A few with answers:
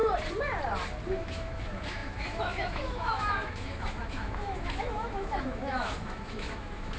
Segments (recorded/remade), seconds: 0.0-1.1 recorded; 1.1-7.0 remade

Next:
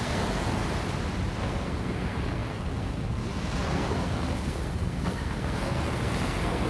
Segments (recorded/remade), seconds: 0.0-0.6 remade; 0.6-1.4 recorded; 1.4-6.7 remade

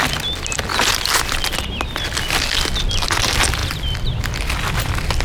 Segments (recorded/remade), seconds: 0.0-0.7 recorded; 0.7-1.5 remade; 1.5-3.6 recorded; 3.6-4.2 remade; 4.2-5.2 recorded

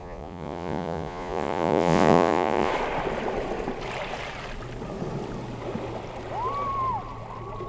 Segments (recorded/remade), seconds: 0.0-2.7 remade; 2.7-7.7 recorded

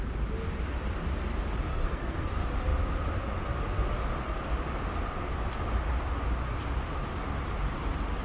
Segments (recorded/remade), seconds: 0.0-1.7 recorded; 1.7-2.3 remade; 2.3-8.2 recorded

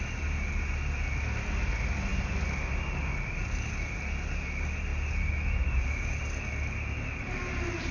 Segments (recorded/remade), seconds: 0.0-7.9 recorded

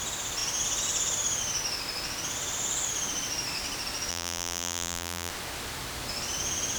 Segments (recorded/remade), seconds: 0.0-4.1 recorded; 4.1-5.3 remade; 5.3-6.8 recorded

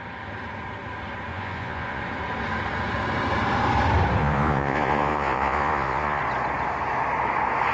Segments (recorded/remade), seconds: 0.0-1.3 recorded; 1.3-2.0 remade; 2.0-4.2 recorded; 4.2-6.2 remade; 6.2-7.7 recorded